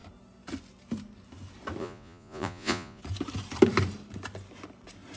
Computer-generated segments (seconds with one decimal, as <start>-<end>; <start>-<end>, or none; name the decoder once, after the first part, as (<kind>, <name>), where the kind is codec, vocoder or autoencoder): 1.8-3.0 (vocoder, Vocos)